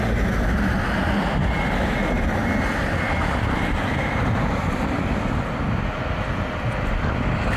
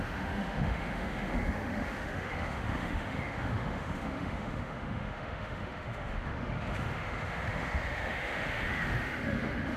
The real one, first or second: first